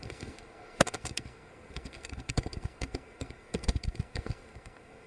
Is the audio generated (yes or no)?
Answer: yes